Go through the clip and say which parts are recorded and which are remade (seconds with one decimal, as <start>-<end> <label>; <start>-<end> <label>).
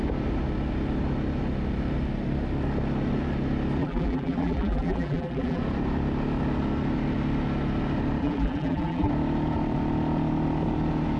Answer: 0.0-3.8 recorded; 3.8-5.6 remade; 5.6-8.2 recorded; 8.2-9.1 remade; 9.1-11.2 recorded